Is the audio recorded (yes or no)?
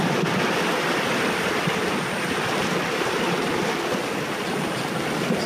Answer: yes